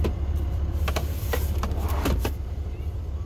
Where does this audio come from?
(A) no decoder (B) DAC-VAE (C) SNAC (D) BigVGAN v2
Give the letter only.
D